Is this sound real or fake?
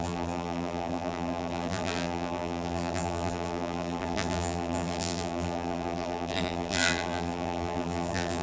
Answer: fake